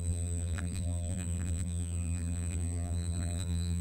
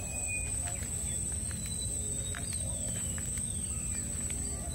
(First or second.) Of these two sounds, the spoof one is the first